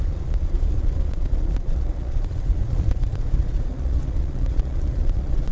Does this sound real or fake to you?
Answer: fake